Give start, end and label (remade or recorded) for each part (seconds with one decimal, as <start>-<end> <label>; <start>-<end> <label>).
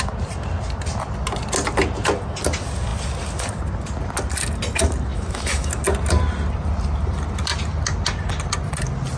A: 0.0-5.1 recorded; 5.1-5.7 remade; 5.7-9.2 recorded